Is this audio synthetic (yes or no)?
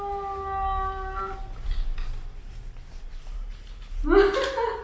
no